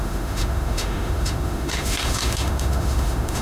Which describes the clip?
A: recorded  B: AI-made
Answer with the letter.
B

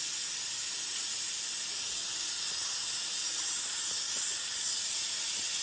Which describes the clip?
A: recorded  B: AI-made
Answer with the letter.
A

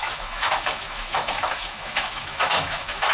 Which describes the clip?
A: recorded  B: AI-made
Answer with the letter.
B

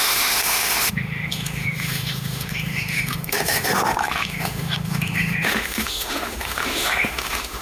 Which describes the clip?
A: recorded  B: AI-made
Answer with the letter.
B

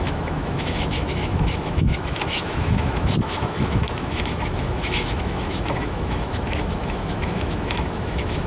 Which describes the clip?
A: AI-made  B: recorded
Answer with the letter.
A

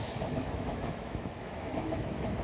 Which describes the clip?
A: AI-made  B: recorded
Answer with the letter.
A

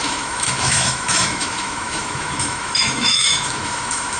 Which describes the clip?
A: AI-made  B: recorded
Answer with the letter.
A